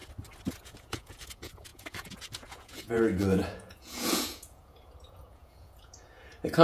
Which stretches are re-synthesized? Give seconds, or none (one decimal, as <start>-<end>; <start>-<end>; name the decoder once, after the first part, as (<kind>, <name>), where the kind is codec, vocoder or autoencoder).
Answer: 0.5-6.6 (vocoder, Vocos)